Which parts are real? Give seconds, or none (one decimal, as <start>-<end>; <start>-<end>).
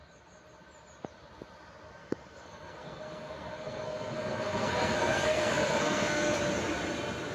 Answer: 0.0-2.0; 6.4-7.3